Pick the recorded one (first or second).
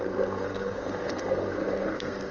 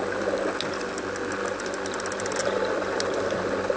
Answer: second